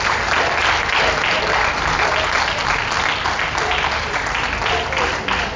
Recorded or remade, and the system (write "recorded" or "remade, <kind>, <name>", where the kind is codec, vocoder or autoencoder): recorded